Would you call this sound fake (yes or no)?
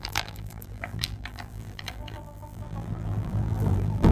yes